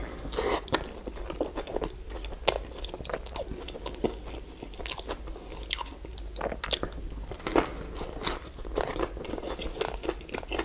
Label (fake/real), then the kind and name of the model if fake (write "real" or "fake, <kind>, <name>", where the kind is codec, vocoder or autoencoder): real